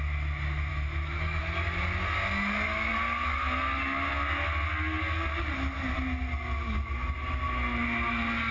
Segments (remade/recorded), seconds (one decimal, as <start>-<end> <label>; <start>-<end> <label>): 0.0-0.7 recorded; 0.7-1.4 remade; 1.4-8.5 recorded